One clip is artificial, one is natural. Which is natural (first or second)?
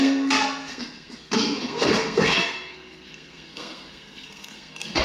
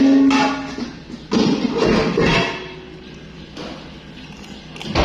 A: second